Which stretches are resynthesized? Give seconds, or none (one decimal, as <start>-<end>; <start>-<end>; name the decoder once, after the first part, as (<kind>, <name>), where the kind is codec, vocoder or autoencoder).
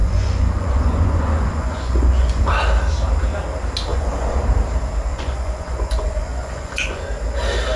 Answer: 0.0-2.4 (vocoder, Vocos); 3.9-4.4; 5.1-7.0